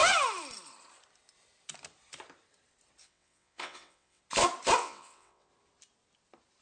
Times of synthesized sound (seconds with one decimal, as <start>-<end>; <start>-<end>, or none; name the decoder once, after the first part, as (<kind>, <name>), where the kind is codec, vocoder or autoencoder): 3.0-4.2 (vocoder, WaveNeXt); 4.8-5.5